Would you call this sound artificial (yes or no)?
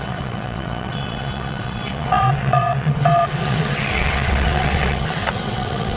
yes